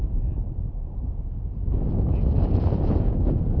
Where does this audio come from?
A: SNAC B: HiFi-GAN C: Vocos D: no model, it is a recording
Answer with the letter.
D